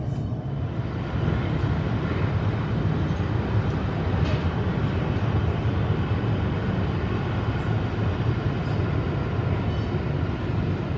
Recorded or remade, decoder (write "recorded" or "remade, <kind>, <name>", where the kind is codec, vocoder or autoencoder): recorded